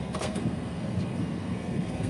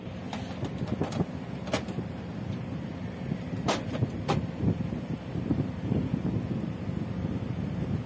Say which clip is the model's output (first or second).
first